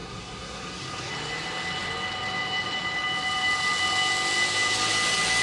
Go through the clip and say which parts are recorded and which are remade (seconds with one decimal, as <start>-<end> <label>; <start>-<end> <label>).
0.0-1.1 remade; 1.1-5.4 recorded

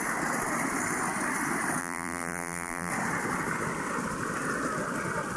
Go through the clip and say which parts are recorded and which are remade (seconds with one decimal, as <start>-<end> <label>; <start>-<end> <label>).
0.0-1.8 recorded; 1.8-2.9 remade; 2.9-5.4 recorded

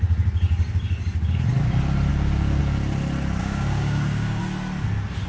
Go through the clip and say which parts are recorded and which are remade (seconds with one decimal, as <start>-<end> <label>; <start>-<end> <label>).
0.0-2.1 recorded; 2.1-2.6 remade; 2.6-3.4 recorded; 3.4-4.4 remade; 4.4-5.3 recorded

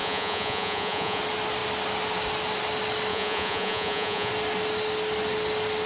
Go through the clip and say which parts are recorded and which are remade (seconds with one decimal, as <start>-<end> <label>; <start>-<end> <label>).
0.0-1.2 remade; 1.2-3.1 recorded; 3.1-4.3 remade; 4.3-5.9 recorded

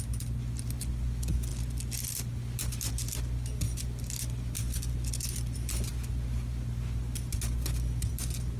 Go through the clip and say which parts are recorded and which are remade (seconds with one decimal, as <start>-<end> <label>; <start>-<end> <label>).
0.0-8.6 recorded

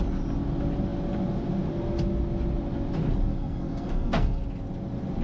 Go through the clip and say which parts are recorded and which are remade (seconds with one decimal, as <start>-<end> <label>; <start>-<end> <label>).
0.0-3.3 recorded; 3.3-4.5 remade; 4.5-5.2 recorded